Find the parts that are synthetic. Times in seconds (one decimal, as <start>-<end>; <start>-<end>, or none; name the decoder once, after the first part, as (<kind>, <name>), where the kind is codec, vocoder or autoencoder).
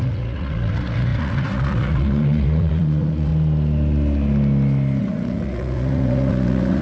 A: 0.0-3.3 (vocoder, Vocos); 5.0-6.8